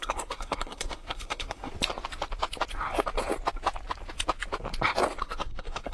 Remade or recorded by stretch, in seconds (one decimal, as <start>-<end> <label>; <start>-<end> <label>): 0.0-1.7 remade; 1.7-5.2 recorded; 5.2-5.9 remade